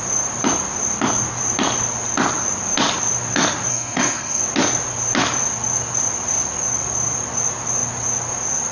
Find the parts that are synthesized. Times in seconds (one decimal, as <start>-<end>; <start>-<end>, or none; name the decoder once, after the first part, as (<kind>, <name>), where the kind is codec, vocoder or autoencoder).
3.7-4.4 (codec, SNAC)